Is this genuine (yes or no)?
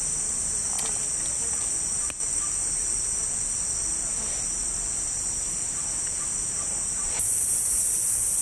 yes